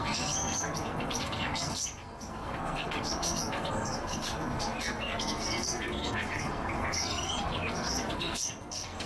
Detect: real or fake fake